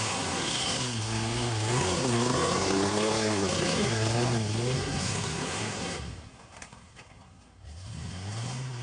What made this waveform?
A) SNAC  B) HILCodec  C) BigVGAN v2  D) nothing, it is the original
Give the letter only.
A